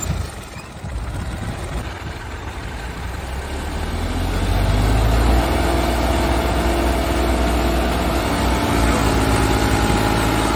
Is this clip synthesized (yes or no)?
no